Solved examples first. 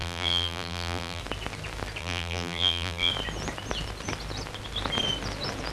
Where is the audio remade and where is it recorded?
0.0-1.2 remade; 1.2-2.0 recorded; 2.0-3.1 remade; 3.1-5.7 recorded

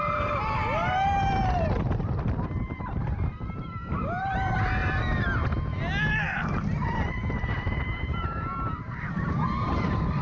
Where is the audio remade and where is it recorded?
0.0-4.8 remade; 4.8-6.1 recorded; 6.1-10.2 remade

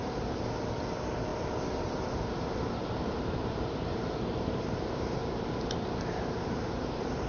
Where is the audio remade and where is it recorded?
0.0-5.2 remade; 5.2-6.1 recorded; 6.1-7.3 remade

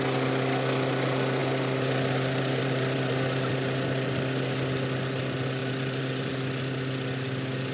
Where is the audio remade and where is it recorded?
0.0-1.4 recorded; 1.4-3.5 remade; 3.5-5.6 recorded; 5.6-6.3 remade; 6.3-7.7 recorded

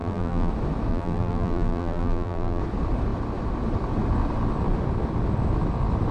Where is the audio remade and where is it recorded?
0.0-0.5 remade; 0.5-0.9 recorded; 0.9-2.6 remade; 2.6-6.1 recorded

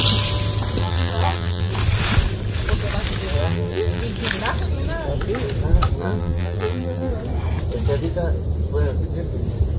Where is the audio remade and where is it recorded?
0.0-0.8 recorded; 0.8-1.7 remade; 1.7-3.4 recorded; 3.4-4.0 remade; 4.0-6.0 recorded; 6.0-7.1 remade; 7.1-9.8 recorded